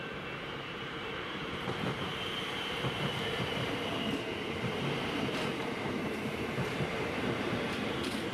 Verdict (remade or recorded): remade